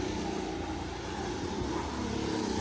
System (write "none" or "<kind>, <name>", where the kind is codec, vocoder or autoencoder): none